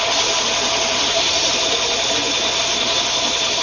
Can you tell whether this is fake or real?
real